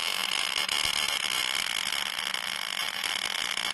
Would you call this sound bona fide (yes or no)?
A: yes